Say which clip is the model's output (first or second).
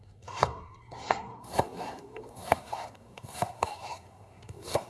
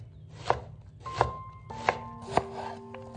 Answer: first